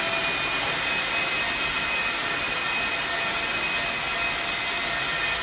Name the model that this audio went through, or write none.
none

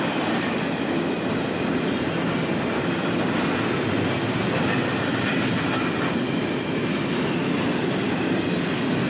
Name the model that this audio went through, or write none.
none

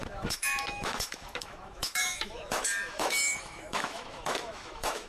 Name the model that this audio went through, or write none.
autoencoder, DAC-VAE